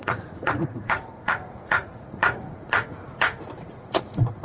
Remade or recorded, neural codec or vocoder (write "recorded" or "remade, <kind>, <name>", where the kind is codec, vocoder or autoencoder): remade, vocoder, Vocos